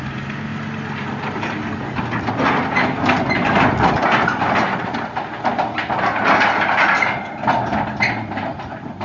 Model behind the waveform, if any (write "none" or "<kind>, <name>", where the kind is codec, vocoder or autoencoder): none